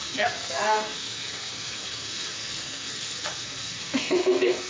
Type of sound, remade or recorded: remade